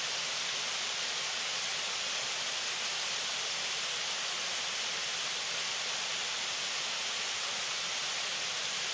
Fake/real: real